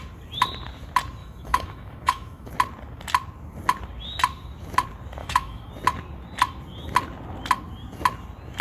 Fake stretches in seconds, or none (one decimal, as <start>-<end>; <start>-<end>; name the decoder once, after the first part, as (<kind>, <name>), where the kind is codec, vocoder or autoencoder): 1.2-2.5 (autoencoder, DAC-VAE); 5.2-5.7

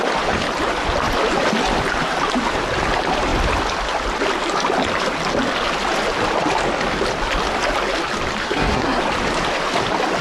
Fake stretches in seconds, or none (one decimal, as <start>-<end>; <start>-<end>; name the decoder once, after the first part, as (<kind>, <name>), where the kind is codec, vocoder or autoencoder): 8.4-9.0 (codec, SNAC)